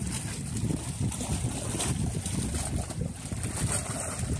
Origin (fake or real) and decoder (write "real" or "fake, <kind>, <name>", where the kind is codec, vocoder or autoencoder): real